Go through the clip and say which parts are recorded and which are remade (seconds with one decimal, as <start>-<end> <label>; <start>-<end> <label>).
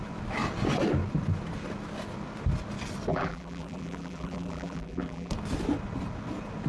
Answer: 0.0-3.1 recorded; 3.1-5.3 remade; 5.3-6.7 recorded